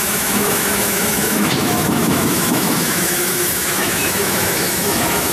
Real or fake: fake